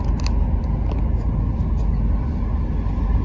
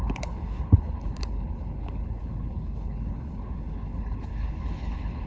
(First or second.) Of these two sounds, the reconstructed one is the second